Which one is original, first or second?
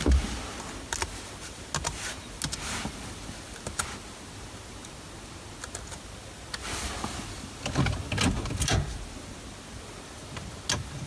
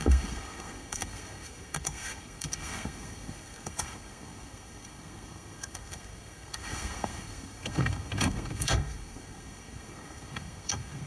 first